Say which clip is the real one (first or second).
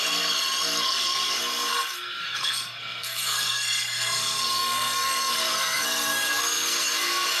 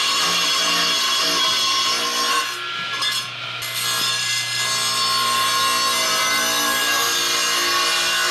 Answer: second